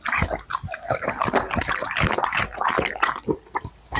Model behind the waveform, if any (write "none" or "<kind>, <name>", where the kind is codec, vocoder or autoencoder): none